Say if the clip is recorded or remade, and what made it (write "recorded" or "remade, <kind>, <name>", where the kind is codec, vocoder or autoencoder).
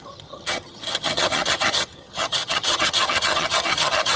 remade, vocoder, HiFi-GAN